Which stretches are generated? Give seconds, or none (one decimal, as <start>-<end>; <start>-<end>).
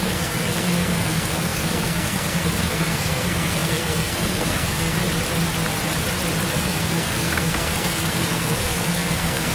0.0-5.0; 6.5-9.5